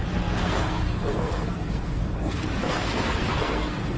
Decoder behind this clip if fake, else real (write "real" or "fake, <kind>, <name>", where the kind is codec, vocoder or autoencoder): fake, codec, SNAC